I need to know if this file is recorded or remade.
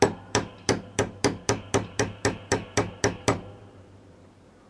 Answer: remade